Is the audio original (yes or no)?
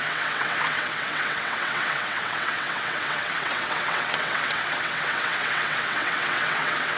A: no